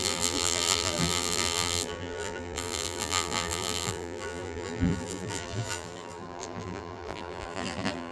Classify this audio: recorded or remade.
remade